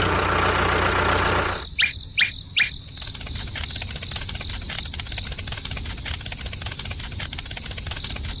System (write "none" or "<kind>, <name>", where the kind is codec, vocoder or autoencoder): none